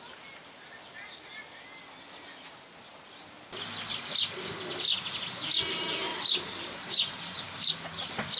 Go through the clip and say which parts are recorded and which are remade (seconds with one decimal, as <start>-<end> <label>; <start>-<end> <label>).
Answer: 0.0-6.1 recorded; 6.1-7.7 remade; 7.7-8.4 recorded